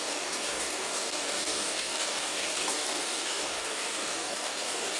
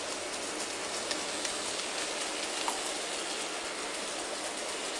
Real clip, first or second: second